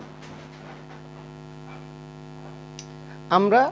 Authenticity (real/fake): real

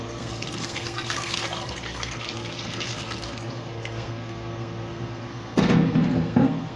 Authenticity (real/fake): fake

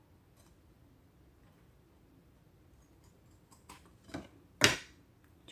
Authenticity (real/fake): real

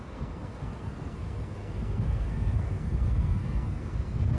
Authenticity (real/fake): fake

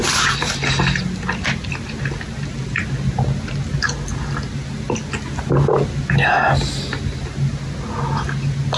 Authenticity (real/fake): real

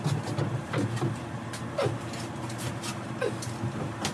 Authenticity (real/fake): real